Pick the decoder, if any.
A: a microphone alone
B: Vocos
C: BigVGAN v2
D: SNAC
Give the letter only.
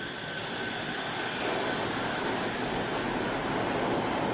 A